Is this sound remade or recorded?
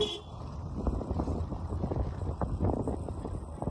recorded